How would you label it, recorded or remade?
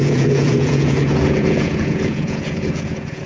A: remade